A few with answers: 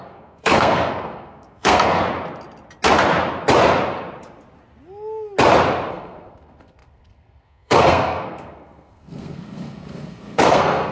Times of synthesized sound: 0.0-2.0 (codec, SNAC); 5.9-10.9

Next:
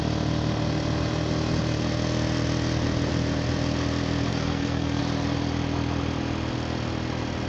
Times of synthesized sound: 4.3-5.0 (codec, SNAC)

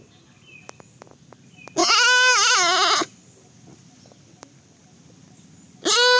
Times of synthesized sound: none

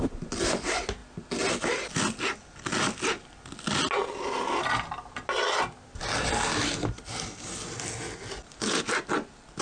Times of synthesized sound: none

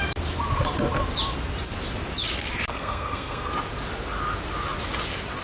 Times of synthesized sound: 2.7-3.5 (codec, SNAC)